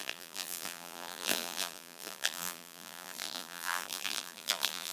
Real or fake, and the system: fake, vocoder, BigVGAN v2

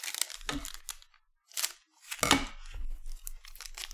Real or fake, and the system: real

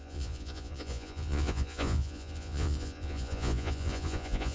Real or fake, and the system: fake, vocoder, Vocos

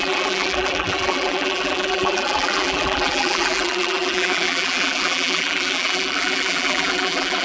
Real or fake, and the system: fake, vocoder, BigVGAN v2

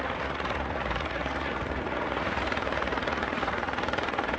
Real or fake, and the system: fake, vocoder, Vocos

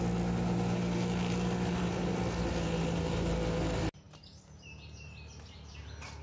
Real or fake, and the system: real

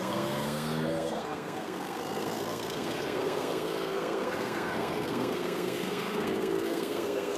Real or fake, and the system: fake, codec, SNAC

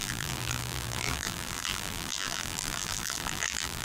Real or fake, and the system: fake, vocoder, BigVGAN v2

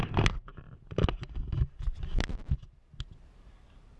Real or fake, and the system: real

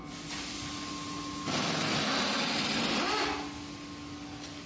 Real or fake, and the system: real